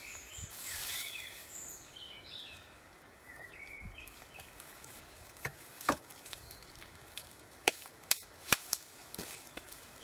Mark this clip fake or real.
fake